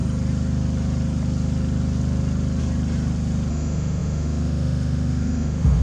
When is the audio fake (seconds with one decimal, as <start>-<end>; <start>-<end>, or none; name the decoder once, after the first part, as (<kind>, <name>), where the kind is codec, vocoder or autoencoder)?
3.5-5.8 (autoencoder, DAC-VAE)